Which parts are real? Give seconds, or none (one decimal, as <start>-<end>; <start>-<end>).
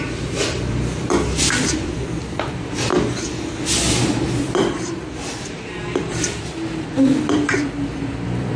2.9-4.1